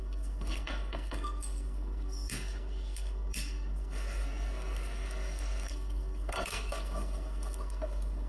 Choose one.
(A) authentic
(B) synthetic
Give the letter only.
B